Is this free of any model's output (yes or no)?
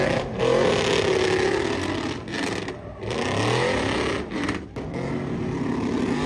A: yes